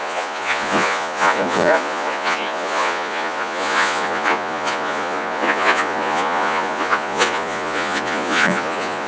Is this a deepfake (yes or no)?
yes